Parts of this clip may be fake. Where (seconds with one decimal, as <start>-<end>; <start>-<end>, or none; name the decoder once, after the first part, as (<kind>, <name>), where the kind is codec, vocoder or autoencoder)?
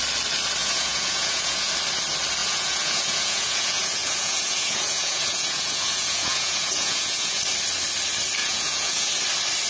0.6-1.7 (vocoder, Vocos); 2.4-7.4; 8.4-9.1